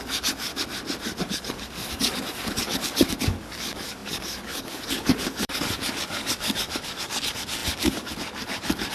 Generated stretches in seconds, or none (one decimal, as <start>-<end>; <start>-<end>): 0.0-0.5; 1.2-8.9